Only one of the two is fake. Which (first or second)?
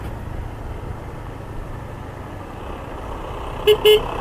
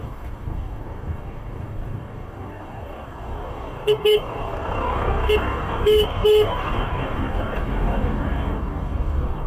second